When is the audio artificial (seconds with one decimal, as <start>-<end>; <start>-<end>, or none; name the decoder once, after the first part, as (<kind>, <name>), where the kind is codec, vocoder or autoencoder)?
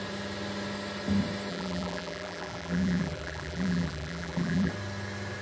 1.5-4.7 (vocoder, BigVGAN v2)